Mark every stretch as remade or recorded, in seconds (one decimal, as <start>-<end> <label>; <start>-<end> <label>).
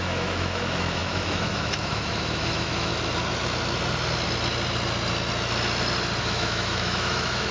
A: 0.0-2.9 remade; 2.9-6.2 recorded; 6.2-7.5 remade